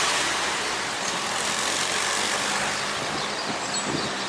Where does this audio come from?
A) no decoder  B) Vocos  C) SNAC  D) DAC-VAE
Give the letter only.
A